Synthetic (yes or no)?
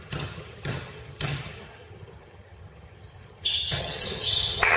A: yes